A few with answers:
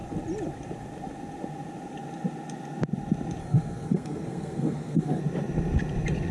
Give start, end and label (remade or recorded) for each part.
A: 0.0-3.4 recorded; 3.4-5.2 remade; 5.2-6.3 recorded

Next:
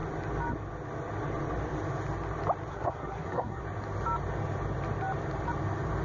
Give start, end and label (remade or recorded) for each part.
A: 0.0-2.7 recorded; 2.7-3.6 remade; 3.6-6.0 recorded

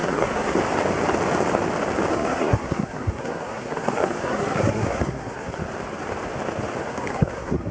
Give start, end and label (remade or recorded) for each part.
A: 0.0-0.6 remade; 0.6-2.1 recorded; 2.1-5.6 remade; 5.6-6.8 recorded; 6.8-7.7 remade

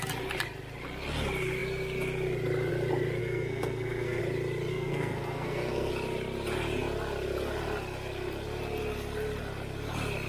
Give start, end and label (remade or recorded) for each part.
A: 0.0-3.2 recorded; 3.2-4.2 remade; 4.2-4.7 recorded; 4.7-5.9 remade; 5.9-10.3 recorded

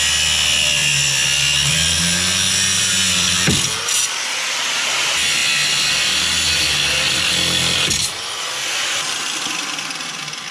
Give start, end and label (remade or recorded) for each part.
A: 0.0-10.5 recorded